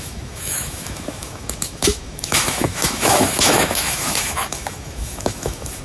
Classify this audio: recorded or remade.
remade